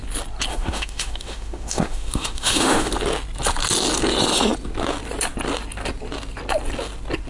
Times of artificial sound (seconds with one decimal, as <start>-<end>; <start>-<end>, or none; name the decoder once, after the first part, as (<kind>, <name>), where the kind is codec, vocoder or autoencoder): 0.5-2.9 (autoencoder, DAC-VAE)